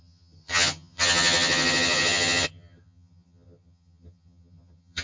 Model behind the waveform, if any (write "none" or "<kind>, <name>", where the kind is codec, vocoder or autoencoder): vocoder, HiFi-GAN